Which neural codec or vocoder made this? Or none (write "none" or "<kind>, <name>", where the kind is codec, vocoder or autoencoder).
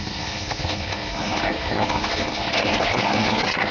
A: codec, SNAC